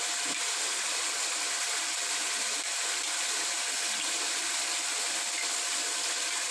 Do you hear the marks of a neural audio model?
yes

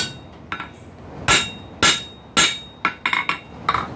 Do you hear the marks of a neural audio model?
no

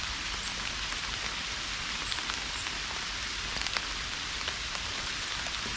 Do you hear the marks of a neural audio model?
no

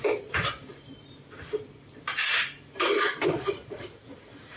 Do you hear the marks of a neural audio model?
yes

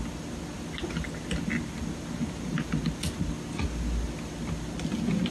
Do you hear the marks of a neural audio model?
no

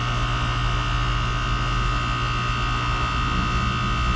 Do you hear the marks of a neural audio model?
no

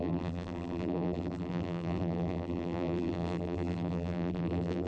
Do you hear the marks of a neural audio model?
yes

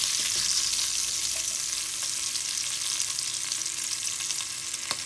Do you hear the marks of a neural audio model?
no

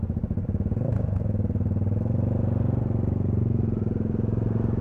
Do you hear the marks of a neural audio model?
no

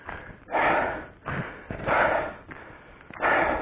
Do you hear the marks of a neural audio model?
no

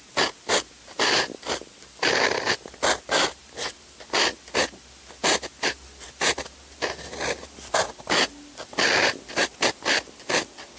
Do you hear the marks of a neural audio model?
no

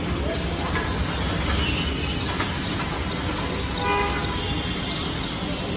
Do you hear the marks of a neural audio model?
no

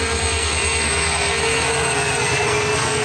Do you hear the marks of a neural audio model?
yes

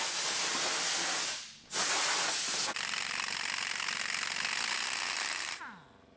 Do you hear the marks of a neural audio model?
no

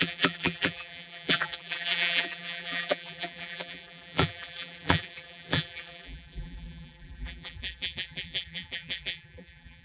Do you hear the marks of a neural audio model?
yes